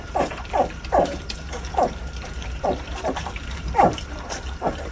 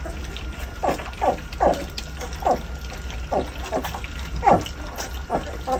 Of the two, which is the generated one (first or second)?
first